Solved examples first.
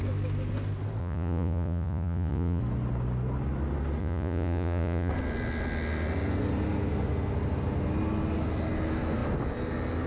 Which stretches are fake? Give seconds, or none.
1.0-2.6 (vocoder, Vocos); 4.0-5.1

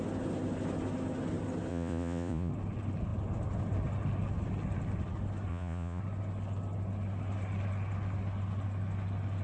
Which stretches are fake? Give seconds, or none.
1.7-2.5 (vocoder, Vocos); 5.5-6.0